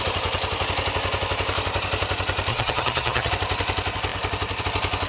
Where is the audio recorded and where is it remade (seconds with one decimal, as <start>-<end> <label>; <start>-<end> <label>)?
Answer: 0.0-2.5 recorded; 2.5-3.3 remade; 3.3-5.1 recorded